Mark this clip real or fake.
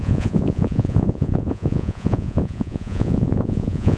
fake